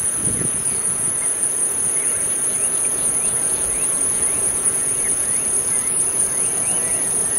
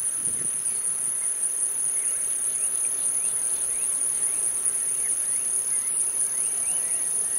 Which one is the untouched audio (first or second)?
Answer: second